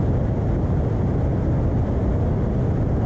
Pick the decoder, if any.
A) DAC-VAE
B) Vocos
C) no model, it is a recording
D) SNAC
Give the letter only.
C